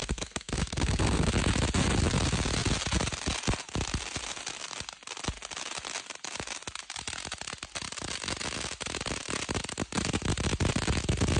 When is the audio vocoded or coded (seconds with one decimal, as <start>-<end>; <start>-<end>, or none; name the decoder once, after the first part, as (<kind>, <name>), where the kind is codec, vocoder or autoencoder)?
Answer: 0.0-1.3 (codec, SNAC)